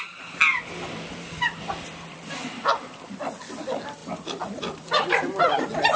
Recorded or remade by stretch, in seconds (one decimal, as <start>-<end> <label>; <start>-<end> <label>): 0.0-0.5 recorded; 0.5-3.4 remade; 3.4-4.0 recorded; 4.0-5.4 remade; 5.4-6.0 recorded